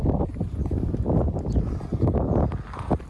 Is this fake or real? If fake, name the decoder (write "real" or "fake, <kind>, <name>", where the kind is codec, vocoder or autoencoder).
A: real